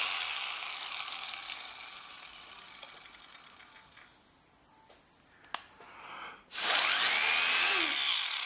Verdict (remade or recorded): recorded